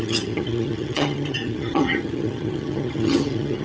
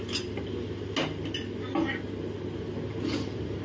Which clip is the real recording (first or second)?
second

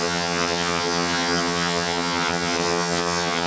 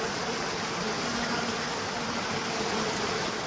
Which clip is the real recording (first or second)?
second